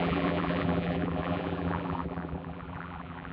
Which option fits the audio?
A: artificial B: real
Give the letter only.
A